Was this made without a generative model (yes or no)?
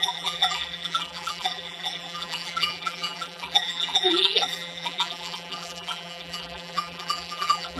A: no